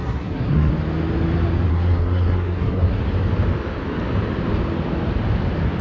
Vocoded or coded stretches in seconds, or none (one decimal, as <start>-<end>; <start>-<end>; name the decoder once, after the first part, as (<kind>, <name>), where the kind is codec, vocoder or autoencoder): 0.0-0.7 (codec, SNAC); 1.7-3.0